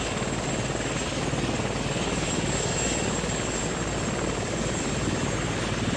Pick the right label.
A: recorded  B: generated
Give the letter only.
A